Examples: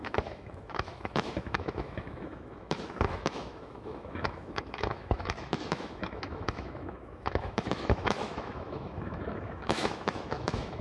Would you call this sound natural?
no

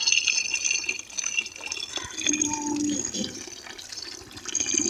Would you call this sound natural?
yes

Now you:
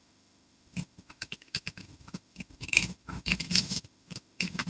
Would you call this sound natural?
no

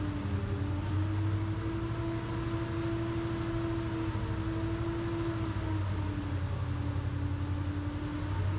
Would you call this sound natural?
yes